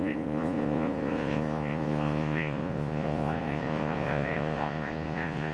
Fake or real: fake